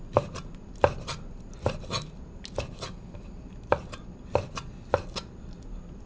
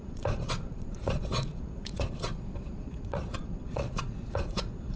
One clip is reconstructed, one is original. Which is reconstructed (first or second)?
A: second